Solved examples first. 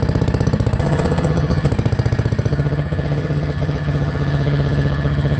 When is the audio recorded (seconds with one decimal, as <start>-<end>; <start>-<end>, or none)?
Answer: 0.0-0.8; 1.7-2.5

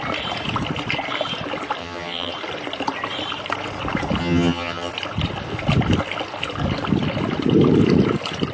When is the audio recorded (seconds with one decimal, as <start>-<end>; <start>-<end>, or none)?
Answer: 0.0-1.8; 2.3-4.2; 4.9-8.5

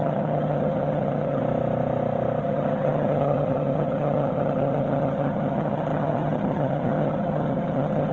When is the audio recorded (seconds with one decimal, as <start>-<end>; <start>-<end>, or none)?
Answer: 1.4-2.4

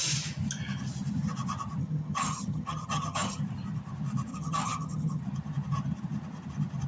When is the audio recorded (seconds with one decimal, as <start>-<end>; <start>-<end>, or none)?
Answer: 0.0-1.8; 3.4-4.3; 5.2-6.9

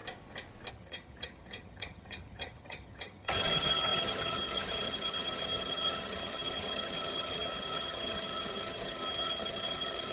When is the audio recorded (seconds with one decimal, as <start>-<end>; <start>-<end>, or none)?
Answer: 0.0-0.7

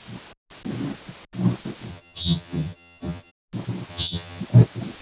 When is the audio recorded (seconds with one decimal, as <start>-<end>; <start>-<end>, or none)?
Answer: 0.0-1.9; 3.3-3.9; 4.4-5.0